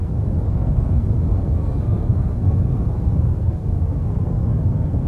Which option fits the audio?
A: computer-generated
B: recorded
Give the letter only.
A